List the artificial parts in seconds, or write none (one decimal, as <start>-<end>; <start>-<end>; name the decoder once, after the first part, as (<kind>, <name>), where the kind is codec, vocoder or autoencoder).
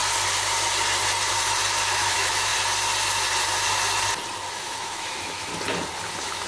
1.9-2.5 (autoencoder, DAC-VAE); 4.5-5.5; 6.1-6.5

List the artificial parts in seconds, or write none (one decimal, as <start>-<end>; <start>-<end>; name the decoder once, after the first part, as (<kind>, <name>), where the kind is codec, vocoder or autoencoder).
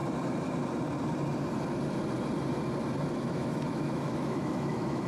3.1-5.1 (autoencoder, DAC-VAE)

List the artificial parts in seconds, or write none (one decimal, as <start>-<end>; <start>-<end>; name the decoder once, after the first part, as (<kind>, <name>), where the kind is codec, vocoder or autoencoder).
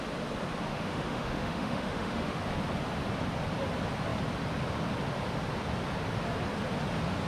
0.7-2.4 (autoencoder, DAC-VAE)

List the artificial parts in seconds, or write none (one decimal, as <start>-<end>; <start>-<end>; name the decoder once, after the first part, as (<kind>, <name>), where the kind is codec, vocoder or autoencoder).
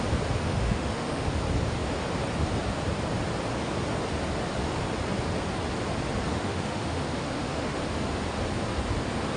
0.4-1.3 (autoencoder, DAC-VAE); 6.3-7.8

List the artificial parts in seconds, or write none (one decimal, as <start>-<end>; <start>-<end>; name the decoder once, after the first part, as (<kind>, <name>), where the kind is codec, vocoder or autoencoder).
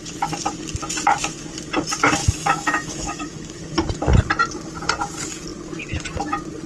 2.2-3.6 (autoencoder, DAC-VAE)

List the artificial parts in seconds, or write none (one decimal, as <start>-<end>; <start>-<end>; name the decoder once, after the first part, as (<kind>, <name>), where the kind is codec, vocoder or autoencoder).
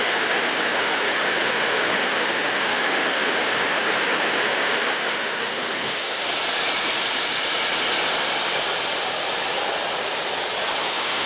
0.0-6.3 (autoencoder, DAC-VAE); 10.8-11.3